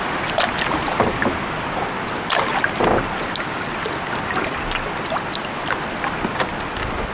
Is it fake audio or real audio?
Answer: real